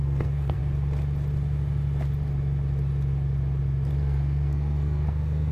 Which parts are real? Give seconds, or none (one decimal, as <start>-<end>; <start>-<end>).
0.6-3.9